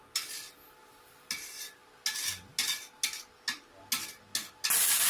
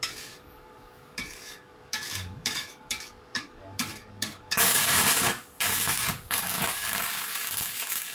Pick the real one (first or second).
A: first